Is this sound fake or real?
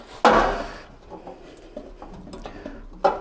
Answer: real